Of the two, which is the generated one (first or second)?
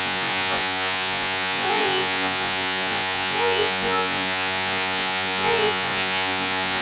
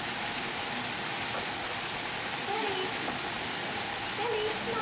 first